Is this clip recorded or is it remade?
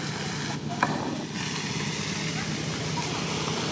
recorded